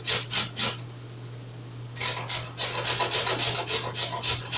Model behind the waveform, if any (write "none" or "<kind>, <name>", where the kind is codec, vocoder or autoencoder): none